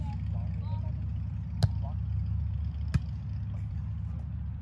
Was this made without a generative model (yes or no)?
yes